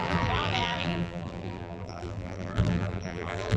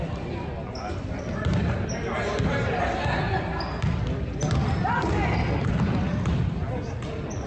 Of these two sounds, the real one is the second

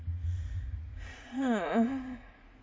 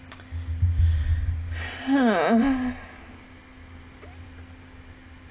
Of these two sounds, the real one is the second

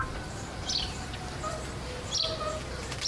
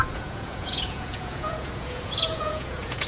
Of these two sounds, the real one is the first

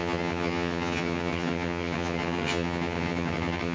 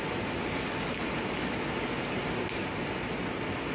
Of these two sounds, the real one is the second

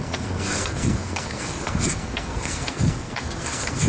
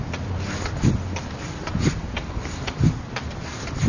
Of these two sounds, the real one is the second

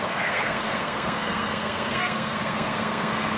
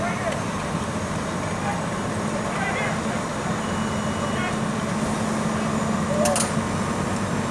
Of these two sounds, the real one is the second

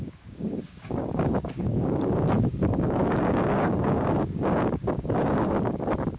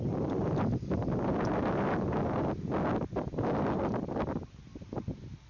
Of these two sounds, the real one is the second